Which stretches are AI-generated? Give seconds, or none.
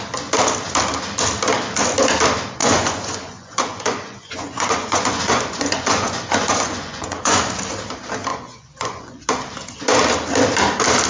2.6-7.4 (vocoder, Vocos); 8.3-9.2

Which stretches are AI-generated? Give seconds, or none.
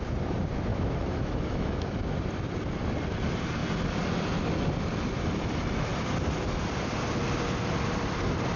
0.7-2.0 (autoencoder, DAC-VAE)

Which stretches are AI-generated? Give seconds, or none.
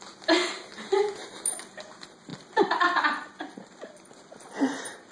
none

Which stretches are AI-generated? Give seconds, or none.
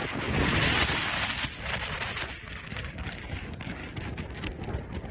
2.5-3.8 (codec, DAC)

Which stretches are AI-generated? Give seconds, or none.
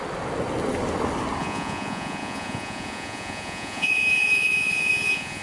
1.4-5.4 (vocoder, Vocos)